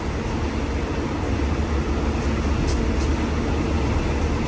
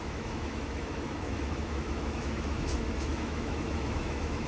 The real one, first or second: first